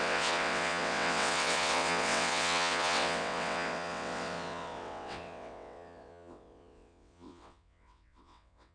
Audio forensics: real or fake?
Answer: fake